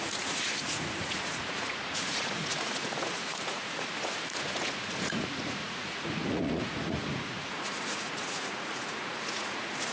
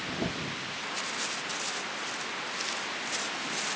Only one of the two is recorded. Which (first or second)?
second